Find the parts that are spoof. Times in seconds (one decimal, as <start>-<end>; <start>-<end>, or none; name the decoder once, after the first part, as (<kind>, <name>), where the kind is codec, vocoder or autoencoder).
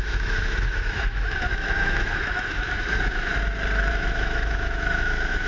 0.0-3.3 (autoencoder, DAC-VAE); 3.9-5.5